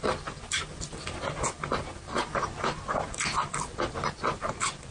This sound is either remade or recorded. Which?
recorded